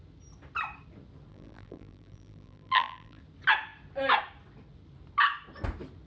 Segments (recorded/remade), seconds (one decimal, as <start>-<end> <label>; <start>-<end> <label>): 0.0-1.3 recorded; 1.3-3.2 remade; 3.2-6.1 recorded